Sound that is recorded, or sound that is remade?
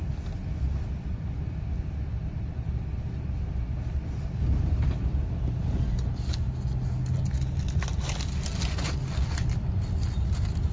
recorded